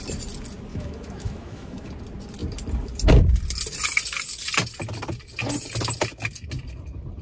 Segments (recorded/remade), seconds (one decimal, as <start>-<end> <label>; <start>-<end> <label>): 0.0-0.7 recorded; 0.7-1.9 remade; 1.9-7.2 recorded